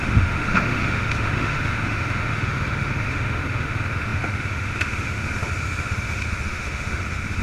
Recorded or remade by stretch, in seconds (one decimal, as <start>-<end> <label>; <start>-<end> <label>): 0.0-7.4 remade